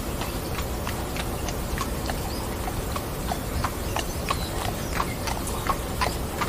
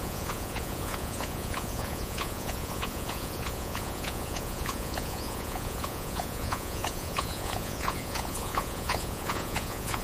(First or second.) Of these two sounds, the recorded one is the first